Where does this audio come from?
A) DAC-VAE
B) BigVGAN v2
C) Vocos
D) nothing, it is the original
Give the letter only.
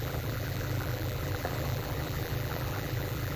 B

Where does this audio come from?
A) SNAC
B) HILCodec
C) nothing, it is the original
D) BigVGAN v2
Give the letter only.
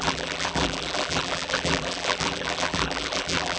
D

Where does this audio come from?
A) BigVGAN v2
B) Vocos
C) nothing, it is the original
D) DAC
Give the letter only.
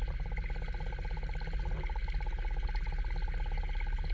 C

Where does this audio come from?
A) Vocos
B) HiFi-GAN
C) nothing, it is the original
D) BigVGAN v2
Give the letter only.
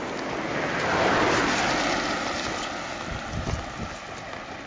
C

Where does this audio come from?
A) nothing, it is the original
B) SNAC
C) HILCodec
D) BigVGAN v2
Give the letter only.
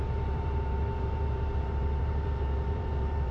D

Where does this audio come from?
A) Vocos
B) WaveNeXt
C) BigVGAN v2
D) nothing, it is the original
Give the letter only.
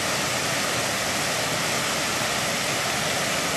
D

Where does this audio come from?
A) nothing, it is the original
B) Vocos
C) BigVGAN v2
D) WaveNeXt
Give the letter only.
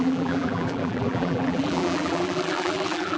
C